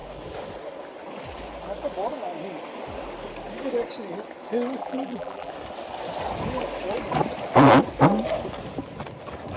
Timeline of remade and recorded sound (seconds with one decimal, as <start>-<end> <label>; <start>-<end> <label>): 0.0-4.8 recorded; 4.8-5.5 remade; 5.5-9.6 recorded